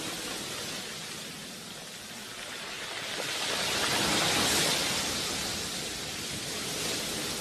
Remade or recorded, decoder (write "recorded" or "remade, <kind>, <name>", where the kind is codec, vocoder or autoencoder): recorded